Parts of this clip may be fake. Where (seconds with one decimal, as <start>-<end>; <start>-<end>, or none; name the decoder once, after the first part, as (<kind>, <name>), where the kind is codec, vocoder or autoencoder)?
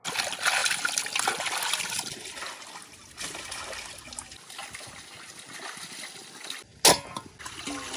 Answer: none